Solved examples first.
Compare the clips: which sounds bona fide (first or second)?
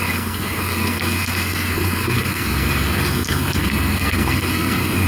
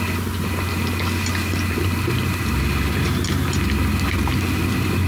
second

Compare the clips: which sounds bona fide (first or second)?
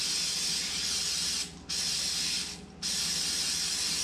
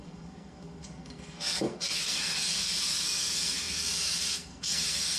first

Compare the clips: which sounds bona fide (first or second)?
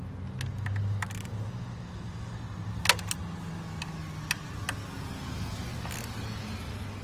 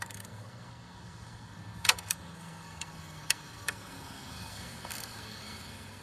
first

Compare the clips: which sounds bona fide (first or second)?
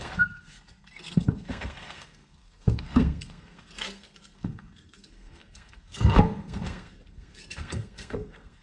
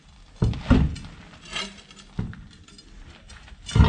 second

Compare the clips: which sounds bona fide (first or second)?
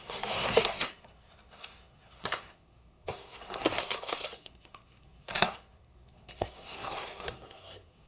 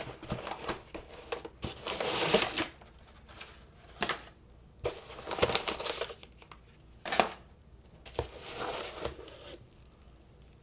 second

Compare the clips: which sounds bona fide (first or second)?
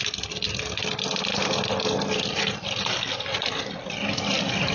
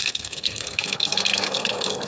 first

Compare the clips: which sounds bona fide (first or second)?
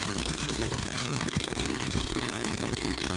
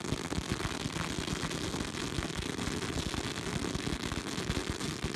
second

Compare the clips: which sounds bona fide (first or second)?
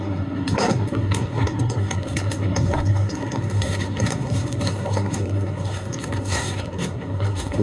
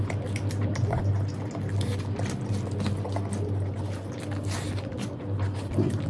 second